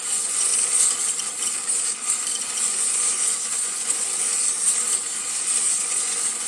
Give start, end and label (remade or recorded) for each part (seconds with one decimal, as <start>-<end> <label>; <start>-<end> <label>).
0.0-0.5 remade; 0.5-2.4 recorded; 2.4-4.3 remade; 4.3-5.8 recorded; 5.8-6.5 remade